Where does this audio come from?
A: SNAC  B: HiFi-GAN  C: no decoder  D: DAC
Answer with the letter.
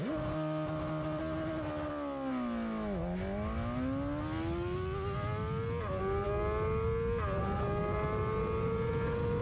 C